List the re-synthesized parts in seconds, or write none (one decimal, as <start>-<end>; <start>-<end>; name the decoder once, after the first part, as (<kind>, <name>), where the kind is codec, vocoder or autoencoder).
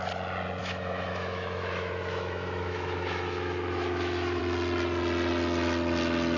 0.6-4.4 (autoencoder, DAC-VAE)